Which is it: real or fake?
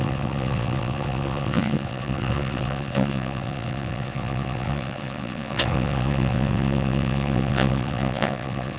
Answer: fake